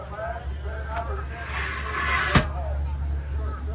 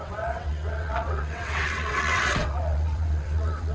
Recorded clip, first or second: first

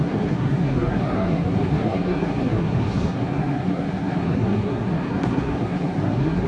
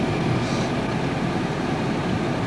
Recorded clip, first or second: second